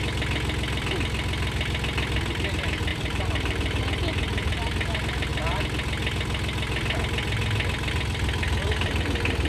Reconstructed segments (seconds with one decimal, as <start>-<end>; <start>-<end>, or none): 2.9-3.8